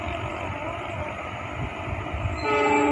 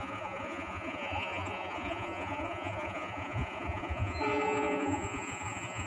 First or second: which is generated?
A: second